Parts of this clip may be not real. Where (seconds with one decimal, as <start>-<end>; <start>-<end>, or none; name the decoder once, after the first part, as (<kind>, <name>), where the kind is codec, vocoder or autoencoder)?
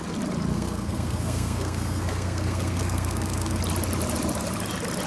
0.5-3.6 (codec, SNAC)